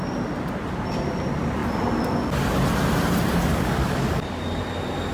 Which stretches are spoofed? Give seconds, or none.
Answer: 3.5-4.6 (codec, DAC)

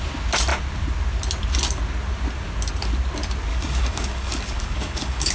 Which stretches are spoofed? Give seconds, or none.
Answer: 3.5-5.3 (codec, DAC)

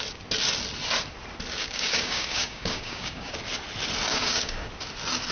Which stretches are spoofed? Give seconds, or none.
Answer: 1.6-3.4 (codec, DAC); 4.1-4.7

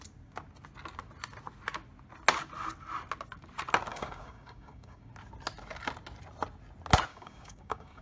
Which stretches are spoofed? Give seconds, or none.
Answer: 3.9-5.1 (codec, DAC); 7.1-8.0

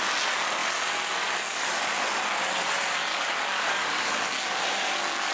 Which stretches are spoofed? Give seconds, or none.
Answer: 3.1-5.3 (codec, DAC)

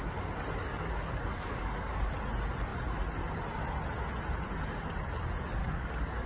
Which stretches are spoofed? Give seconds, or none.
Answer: 0.7-2.1 (codec, DAC); 5.6-6.3

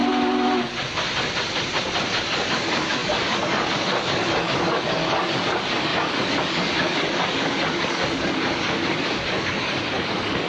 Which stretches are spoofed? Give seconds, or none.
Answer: 2.2-10.5 (codec, DAC)